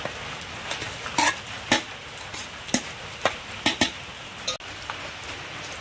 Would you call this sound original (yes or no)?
yes